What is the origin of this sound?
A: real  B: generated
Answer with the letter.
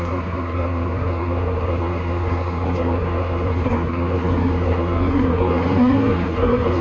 B